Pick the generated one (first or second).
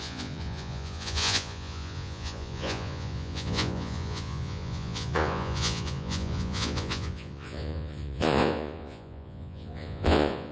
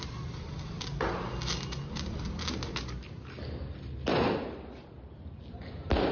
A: first